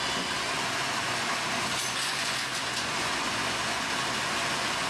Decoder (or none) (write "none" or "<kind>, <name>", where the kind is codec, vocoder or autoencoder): vocoder, Vocos